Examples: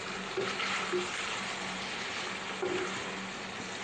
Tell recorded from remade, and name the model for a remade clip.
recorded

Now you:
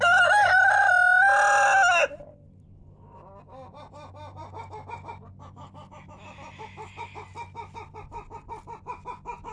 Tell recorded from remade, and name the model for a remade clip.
recorded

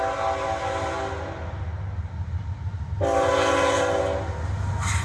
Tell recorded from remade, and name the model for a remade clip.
recorded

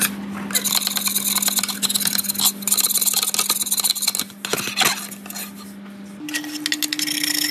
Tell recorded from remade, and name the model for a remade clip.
recorded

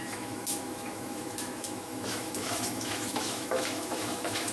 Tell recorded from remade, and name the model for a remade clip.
remade, autoencoder, DAC-VAE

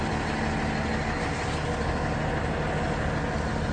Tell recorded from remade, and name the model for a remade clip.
recorded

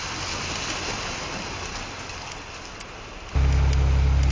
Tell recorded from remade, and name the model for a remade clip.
recorded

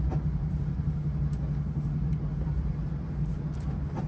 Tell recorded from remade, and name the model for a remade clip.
recorded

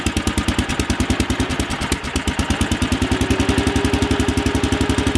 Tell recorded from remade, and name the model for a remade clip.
recorded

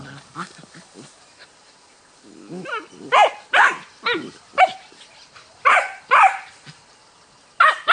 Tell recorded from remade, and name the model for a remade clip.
recorded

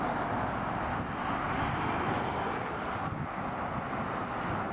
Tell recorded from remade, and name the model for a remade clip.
recorded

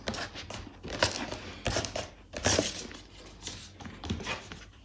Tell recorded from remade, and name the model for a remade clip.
recorded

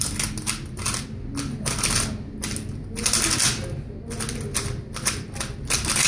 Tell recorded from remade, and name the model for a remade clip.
recorded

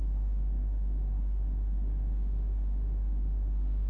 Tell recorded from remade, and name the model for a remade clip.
remade, autoencoder, DAC-VAE